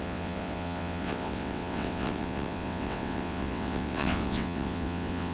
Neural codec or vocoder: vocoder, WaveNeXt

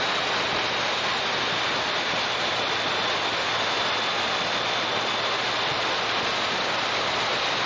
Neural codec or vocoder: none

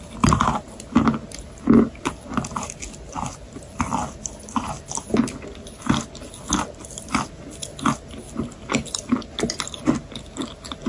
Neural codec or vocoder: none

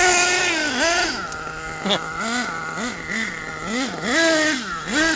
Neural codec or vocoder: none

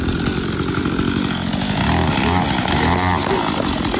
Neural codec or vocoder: none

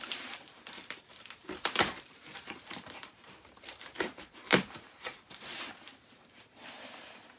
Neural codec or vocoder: vocoder, BigVGAN v2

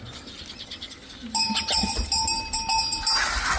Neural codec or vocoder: none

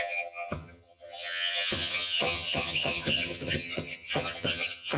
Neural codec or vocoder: vocoder, HiFi-GAN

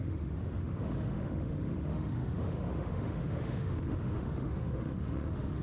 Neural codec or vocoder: autoencoder, DAC-VAE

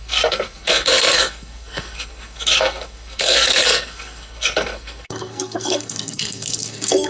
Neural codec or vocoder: codec, SNAC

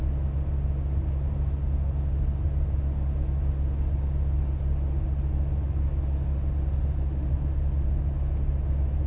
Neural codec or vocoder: none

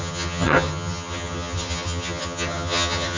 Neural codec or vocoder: vocoder, HiFi-GAN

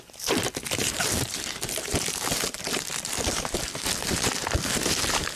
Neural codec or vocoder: none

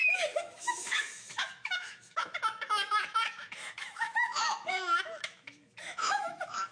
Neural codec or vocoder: autoencoder, DAC-VAE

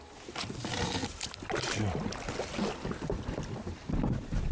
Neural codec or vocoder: none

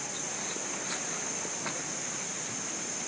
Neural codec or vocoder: none